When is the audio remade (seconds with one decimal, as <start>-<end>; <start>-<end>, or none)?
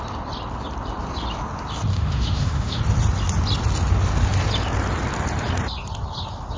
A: 1.9-2.8